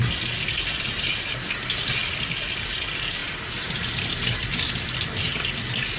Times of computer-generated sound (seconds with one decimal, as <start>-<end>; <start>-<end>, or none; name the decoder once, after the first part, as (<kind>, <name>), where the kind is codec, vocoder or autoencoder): none

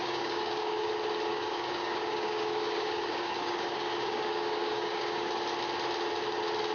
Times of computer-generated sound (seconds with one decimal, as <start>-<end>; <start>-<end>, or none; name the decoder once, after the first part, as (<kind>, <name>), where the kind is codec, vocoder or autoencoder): 0.0-0.9 (codec, DAC); 1.3-5.3

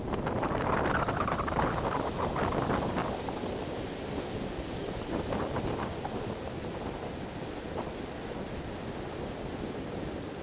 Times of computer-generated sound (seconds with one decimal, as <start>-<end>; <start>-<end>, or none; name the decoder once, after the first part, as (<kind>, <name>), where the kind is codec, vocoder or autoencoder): none

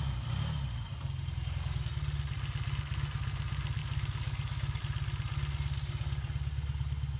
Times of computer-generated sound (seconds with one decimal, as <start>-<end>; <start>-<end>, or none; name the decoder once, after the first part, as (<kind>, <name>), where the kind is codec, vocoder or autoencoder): 3.8-4.8 (codec, DAC)

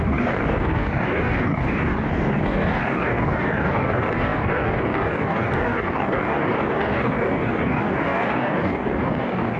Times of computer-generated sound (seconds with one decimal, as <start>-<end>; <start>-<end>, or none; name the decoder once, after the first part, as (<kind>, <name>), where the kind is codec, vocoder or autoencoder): 0.0-9.6 (codec, DAC)

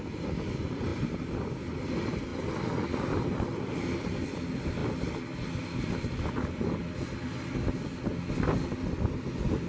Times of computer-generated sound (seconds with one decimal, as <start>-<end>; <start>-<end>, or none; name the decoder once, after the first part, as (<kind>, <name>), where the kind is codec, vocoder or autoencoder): none